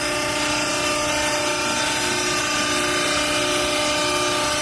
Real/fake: real